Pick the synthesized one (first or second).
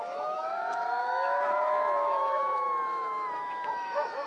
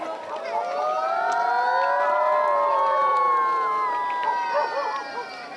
first